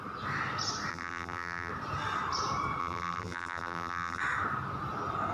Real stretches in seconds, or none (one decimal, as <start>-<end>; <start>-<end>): 0.0-0.9; 1.7-2.8; 4.2-5.3